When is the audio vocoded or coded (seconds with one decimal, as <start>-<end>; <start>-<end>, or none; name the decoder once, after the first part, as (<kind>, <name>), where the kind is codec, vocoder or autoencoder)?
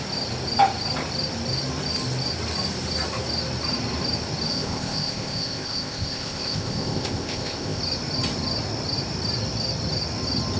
4.5-7.8 (codec, ZipCodec)